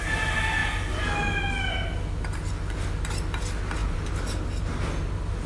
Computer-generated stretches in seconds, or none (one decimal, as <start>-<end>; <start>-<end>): none